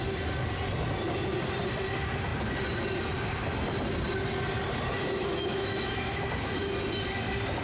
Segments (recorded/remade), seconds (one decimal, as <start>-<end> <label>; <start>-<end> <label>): 0.0-4.9 recorded; 4.9-6.2 remade; 6.2-7.6 recorded